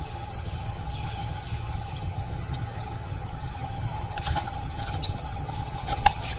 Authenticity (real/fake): fake